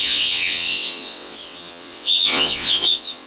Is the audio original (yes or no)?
no